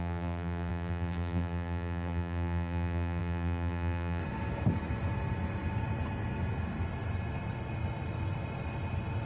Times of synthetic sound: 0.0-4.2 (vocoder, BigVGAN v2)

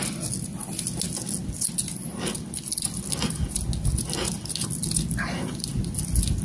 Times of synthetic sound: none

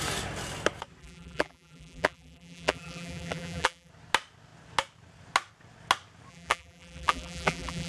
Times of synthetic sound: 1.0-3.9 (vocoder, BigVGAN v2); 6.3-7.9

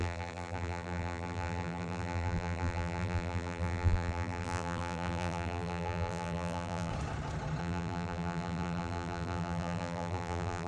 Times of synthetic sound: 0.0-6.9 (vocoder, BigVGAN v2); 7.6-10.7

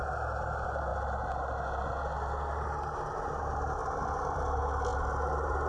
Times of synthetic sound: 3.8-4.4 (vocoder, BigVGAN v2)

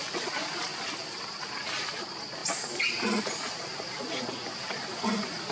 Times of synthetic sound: 0.7-1.4 (vocoder, BigVGAN v2)

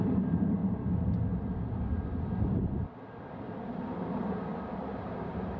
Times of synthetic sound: 0.0-0.6 (vocoder, BigVGAN v2); 4.0-5.6

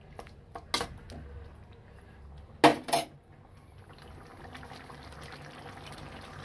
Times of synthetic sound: 2.7-3.3 (vocoder, BigVGAN v2)